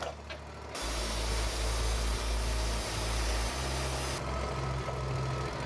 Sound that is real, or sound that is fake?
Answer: real